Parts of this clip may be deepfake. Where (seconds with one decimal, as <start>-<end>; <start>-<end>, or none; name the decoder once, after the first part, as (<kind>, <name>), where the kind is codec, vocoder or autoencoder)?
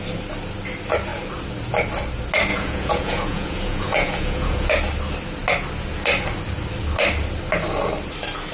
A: 2.5-4.7 (vocoder, Vocos)